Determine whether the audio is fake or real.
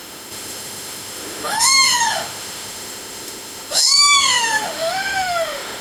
fake